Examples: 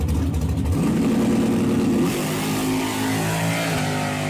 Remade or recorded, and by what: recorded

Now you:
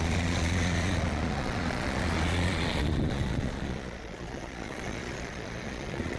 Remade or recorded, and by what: remade, vocoder, Vocos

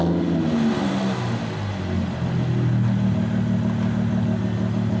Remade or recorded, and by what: recorded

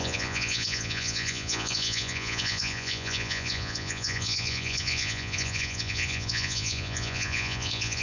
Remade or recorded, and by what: remade, vocoder, Vocos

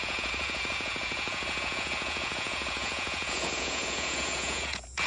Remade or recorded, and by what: remade, vocoder, Vocos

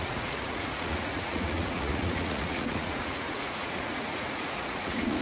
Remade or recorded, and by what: remade, vocoder, Vocos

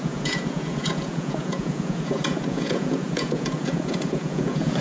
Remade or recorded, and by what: remade, vocoder, Vocos